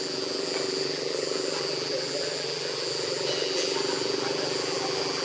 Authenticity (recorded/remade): remade